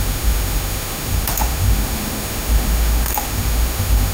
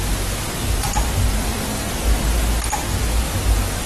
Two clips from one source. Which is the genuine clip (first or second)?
second